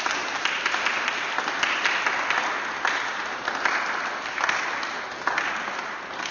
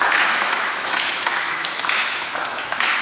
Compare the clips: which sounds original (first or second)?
first